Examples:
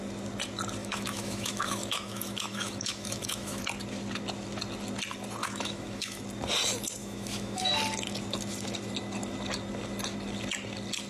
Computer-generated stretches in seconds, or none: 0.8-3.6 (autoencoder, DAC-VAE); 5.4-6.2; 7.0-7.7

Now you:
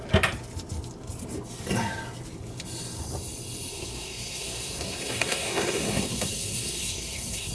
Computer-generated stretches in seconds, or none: 3.7-7.5 (codec, SNAC)

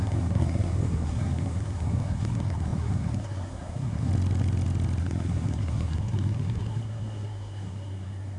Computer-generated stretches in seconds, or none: 0.0-4.1 (codec, SNAC); 5.0-8.4

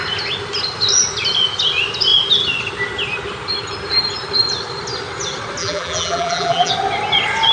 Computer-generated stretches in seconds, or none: 5.6-6.7 (vocoder, BigVGAN v2)

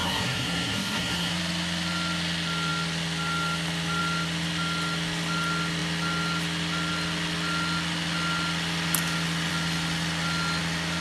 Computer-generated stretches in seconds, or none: 0.0-1.3 (codec, SNAC)